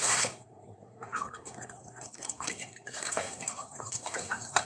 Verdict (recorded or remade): remade